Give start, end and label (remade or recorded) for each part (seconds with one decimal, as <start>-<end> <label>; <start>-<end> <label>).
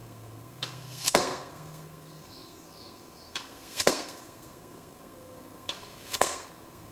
0.0-6.9 remade